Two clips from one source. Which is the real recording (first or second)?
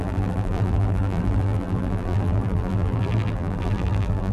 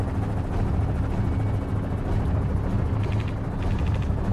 second